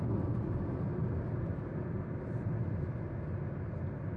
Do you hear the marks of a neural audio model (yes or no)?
no